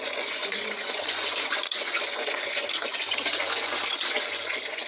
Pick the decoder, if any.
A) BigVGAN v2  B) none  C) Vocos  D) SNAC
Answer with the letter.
C